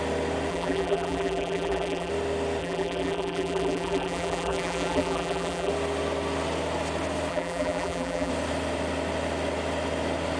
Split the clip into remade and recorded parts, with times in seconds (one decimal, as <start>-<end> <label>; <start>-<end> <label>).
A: 0.0-0.5 recorded; 0.5-2.1 remade; 2.1-2.6 recorded; 2.6-5.7 remade; 5.7-7.3 recorded; 7.3-8.3 remade; 8.3-10.4 recorded